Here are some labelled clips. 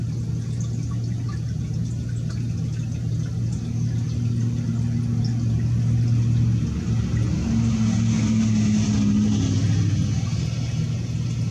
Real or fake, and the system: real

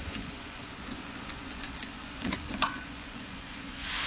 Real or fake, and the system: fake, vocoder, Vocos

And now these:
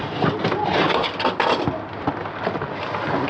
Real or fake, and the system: real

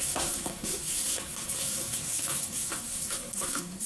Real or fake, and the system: fake, codec, SNAC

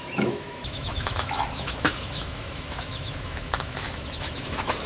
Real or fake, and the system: fake, autoencoder, DAC-VAE